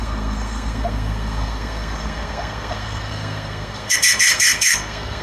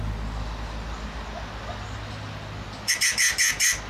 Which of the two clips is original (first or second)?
second